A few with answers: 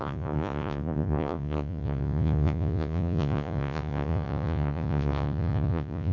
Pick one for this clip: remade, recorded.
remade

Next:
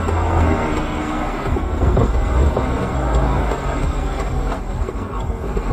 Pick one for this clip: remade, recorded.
remade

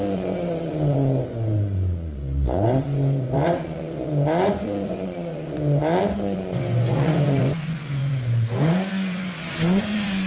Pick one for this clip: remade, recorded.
remade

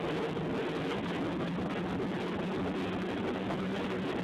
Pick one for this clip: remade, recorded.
recorded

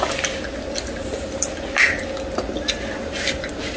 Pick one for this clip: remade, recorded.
recorded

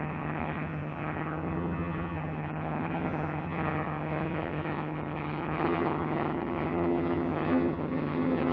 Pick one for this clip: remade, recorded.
remade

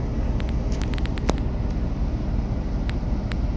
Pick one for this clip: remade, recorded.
recorded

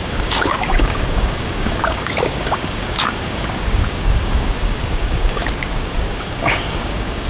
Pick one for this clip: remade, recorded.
remade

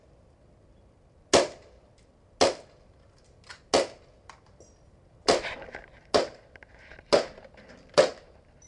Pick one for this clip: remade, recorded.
recorded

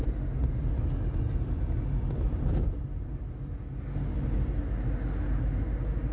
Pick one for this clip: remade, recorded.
recorded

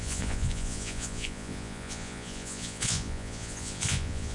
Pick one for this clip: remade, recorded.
remade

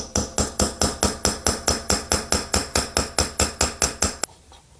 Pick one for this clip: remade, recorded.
recorded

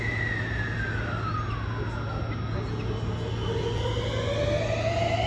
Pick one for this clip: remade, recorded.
recorded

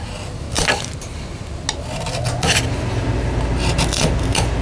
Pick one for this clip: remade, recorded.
recorded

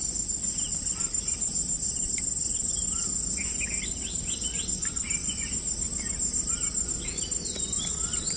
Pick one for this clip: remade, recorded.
recorded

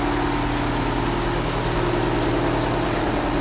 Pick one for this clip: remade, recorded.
recorded